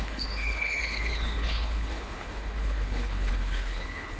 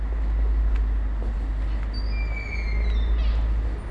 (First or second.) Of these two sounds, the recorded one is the second